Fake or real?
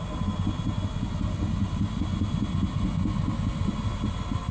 real